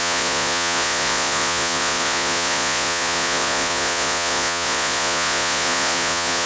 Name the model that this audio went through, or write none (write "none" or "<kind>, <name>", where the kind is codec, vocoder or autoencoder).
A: vocoder, Vocos